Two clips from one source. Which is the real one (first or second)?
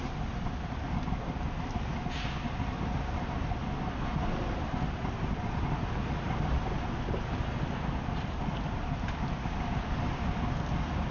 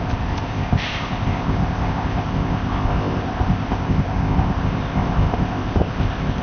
first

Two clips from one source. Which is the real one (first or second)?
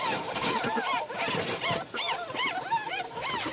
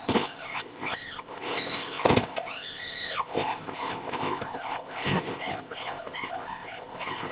first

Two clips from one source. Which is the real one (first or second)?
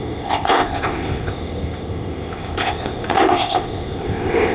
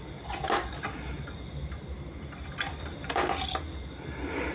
second